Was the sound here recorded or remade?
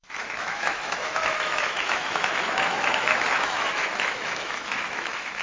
remade